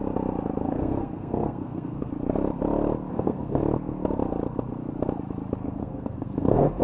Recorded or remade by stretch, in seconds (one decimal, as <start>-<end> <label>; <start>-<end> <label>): 0.0-0.6 recorded; 0.6-2.1 remade; 2.1-3.1 recorded; 3.1-3.6 remade; 3.6-5.8 recorded; 5.8-6.8 remade